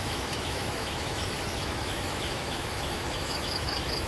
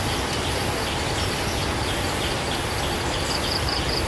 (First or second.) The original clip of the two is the second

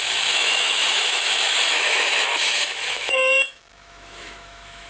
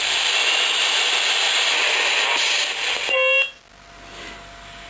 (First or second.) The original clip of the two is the second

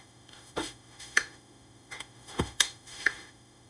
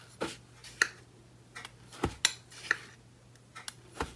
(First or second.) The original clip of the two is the second